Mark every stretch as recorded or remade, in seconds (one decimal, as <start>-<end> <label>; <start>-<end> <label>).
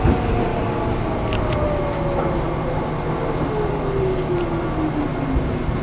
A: 0.0-5.8 recorded